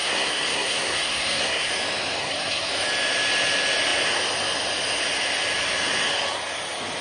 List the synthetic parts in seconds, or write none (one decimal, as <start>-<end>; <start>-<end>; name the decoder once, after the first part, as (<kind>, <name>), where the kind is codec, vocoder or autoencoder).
0.0-1.7 (codec, SNAC); 2.2-2.7